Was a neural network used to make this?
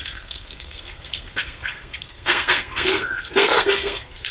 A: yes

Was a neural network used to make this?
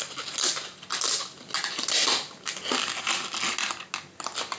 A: no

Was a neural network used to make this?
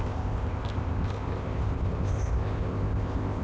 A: yes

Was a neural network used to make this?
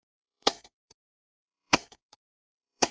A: yes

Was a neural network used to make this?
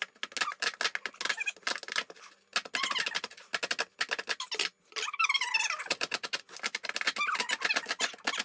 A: no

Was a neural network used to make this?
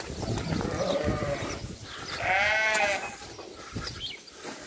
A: no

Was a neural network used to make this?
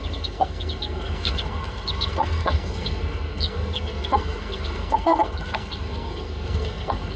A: yes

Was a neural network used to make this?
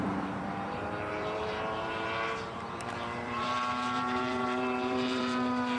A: yes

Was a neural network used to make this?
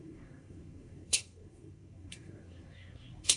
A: yes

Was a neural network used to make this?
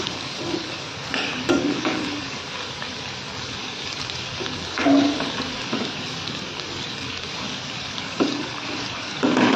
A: yes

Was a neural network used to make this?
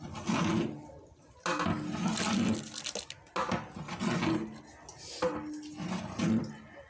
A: no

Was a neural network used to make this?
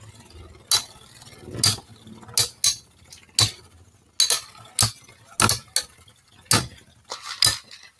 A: no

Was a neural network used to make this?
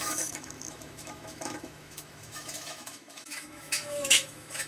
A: yes